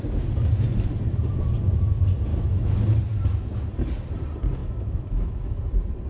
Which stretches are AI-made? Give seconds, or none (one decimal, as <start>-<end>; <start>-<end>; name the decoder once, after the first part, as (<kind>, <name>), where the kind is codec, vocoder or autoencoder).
2.3-2.8 (autoencoder, DAC-VAE); 4.6-5.6